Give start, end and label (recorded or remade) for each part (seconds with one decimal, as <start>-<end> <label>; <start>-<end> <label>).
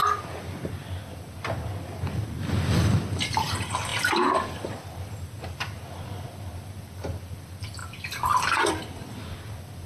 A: 0.0-7.8 recorded; 7.8-8.7 remade; 8.7-9.9 recorded